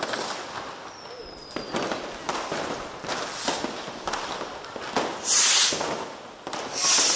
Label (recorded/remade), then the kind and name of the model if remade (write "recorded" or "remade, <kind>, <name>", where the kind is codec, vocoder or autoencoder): recorded